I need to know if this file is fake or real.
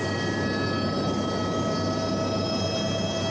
real